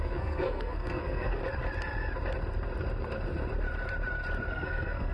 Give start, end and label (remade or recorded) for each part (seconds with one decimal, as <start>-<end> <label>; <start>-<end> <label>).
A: 0.0-1.4 remade; 1.4-4.5 recorded; 4.5-5.1 remade